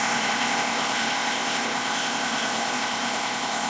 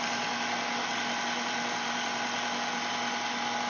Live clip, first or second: second